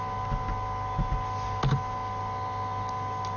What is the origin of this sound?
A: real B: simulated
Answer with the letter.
A